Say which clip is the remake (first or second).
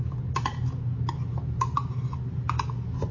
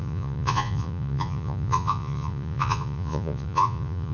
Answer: second